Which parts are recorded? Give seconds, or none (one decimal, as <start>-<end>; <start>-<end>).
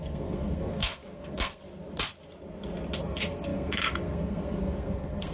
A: 1.6-3.0